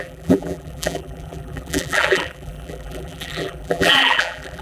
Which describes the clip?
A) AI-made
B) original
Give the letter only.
A